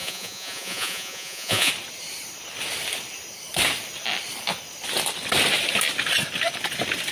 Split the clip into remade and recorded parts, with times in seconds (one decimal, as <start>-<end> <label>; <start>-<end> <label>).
0.0-1.7 remade; 1.7-7.1 recorded

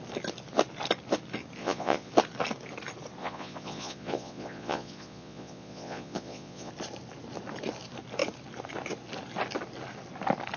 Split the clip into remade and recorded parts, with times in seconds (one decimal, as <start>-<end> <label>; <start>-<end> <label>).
0.0-1.6 recorded; 1.6-2.1 remade; 2.1-3.2 recorded; 3.2-6.7 remade; 6.7-10.6 recorded

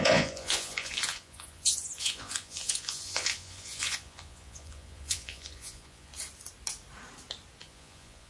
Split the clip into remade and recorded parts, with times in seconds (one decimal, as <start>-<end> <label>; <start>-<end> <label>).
0.0-6.1 remade; 6.1-7.6 recorded; 7.6-8.3 remade

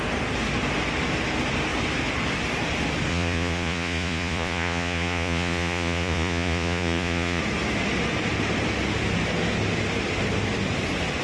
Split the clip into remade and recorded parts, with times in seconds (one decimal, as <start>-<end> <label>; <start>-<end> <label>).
0.0-3.1 recorded; 3.1-7.4 remade; 7.4-11.2 recorded

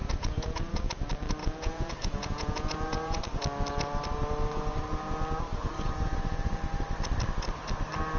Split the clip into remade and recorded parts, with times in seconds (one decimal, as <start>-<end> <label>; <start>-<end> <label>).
0.0-0.9 remade; 0.9-1.4 recorded; 1.4-3.2 remade; 3.2-5.5 recorded; 5.5-6.5 remade; 6.5-8.2 recorded